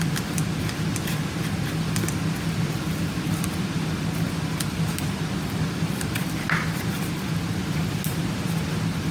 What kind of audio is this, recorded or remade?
recorded